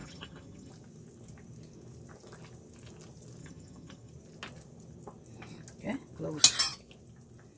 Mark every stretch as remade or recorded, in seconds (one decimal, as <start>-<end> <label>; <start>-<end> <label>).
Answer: 0.0-0.7 remade; 0.7-3.4 recorded; 3.4-4.1 remade; 4.1-7.6 recorded